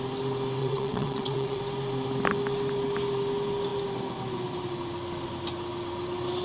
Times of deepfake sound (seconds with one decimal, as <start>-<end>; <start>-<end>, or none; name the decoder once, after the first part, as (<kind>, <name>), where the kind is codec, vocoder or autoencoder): 0.6-1.6 (vocoder, WaveNeXt)